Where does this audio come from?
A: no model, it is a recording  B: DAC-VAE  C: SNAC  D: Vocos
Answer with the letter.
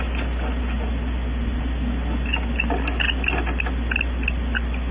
A